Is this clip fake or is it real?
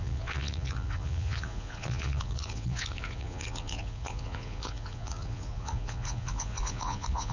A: fake